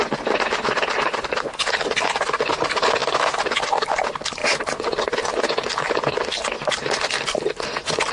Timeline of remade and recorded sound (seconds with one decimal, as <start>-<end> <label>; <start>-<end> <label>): 0.0-8.1 recorded